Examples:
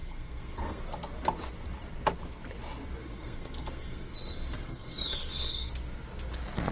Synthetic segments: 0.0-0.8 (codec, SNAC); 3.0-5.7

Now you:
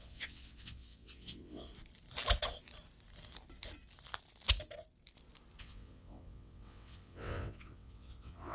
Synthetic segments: 0.0-1.7 (vocoder, WaveNeXt); 5.6-8.5

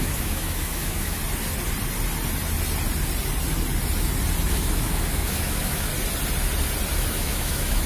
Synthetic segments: 0.0-1.2 (autoencoder, DAC-VAE); 4.5-5.9; 7.0-7.9

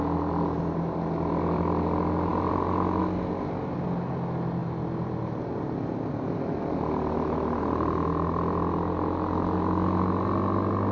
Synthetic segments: none

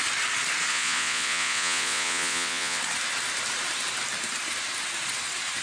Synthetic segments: 0.7-2.8 (vocoder, Vocos)

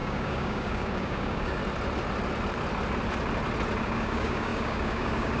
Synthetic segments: 0.0-1.6 (codec, DAC); 3.8-5.4

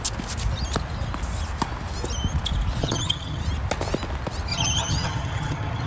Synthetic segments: 2.8-3.4 (vocoder, HiFi-GAN); 4.5-5.9

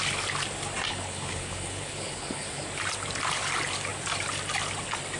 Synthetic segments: 0.9-2.6 (codec, HILCodec)